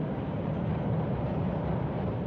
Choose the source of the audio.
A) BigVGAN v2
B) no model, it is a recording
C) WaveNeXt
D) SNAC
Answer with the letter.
A